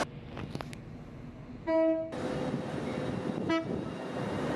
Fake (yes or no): no